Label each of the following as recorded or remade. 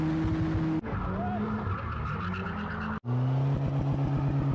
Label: recorded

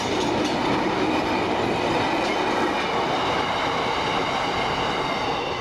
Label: recorded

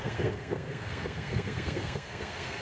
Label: remade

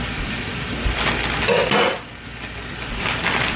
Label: recorded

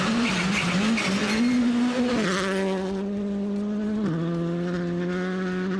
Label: recorded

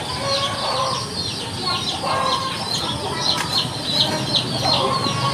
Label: recorded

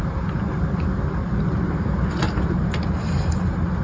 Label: recorded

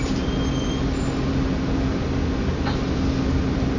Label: recorded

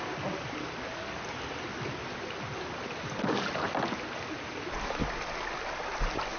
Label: recorded